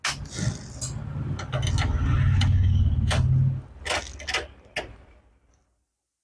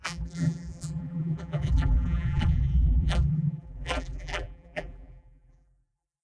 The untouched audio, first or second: first